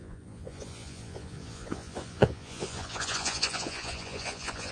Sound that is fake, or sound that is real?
fake